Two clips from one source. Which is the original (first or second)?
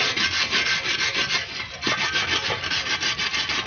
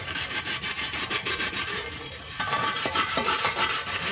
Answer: first